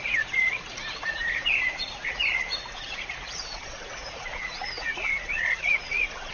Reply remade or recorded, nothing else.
remade